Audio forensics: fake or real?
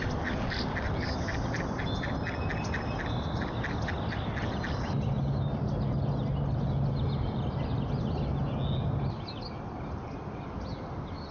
real